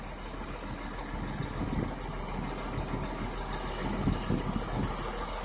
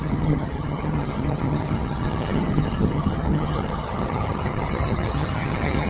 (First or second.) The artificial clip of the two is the second